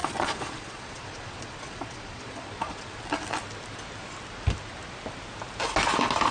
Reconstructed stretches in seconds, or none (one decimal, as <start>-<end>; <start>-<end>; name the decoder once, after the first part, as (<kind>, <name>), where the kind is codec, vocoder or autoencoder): 0.0-3.0 (vocoder, Vocos)